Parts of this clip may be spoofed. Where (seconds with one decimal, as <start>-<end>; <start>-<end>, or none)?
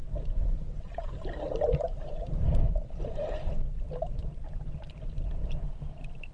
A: 0.0-3.8; 4.2-5.0